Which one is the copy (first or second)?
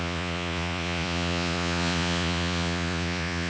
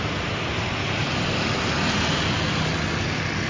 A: first